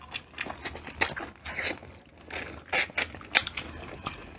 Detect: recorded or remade recorded